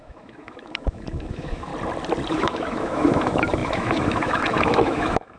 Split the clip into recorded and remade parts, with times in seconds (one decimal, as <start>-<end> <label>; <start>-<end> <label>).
0.0-1.7 remade; 1.7-2.3 recorded; 2.3-5.4 remade